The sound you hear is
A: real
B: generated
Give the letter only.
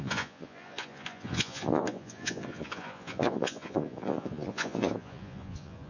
B